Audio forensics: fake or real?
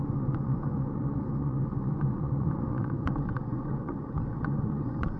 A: fake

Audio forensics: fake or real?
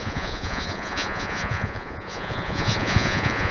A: fake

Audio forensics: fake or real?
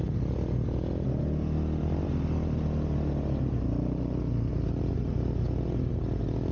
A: real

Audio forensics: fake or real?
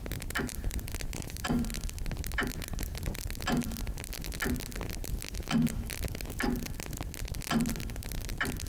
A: real